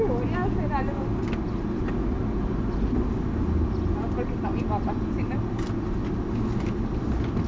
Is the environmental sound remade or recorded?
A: recorded